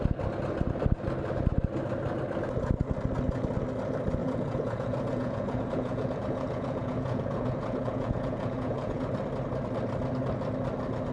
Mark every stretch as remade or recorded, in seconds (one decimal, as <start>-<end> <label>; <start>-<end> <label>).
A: 0.0-4.2 recorded; 4.2-9.1 remade; 9.1-11.1 recorded